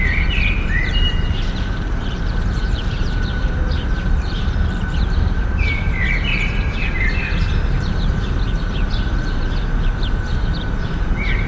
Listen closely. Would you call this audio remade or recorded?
remade